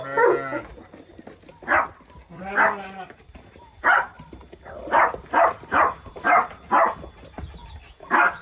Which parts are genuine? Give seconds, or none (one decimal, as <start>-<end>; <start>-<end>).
0.0-8.4